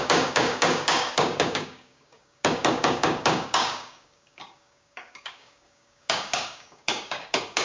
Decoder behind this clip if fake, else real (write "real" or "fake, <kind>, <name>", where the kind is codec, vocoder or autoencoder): fake, codec, DAC